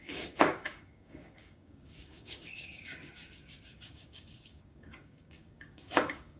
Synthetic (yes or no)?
yes